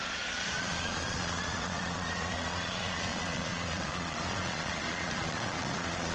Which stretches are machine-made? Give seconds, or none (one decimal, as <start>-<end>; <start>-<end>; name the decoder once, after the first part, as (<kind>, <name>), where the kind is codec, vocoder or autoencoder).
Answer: 0.0-6.1 (vocoder, Vocos)